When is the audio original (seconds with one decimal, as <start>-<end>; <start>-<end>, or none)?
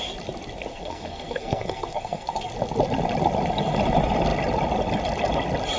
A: 0.0-0.7; 2.5-5.8